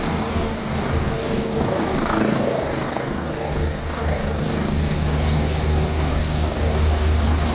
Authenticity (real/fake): fake